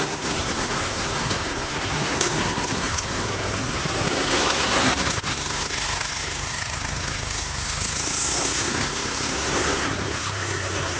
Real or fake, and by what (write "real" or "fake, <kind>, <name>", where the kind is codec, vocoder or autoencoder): fake, codec, SNAC